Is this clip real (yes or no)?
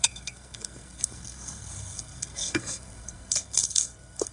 no